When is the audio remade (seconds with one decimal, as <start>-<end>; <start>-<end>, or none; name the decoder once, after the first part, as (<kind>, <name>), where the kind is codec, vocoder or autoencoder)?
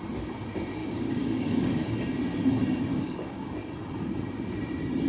0.8-1.9 (codec, DAC); 2.9-3.5